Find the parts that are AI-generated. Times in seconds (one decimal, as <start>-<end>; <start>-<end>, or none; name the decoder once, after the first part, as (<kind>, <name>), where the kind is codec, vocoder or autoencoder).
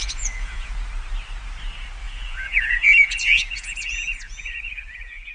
0.0-0.7 (vocoder, Vocos); 2.0-5.3